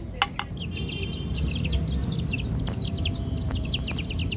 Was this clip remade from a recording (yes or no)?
no